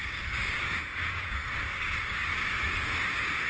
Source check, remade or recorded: remade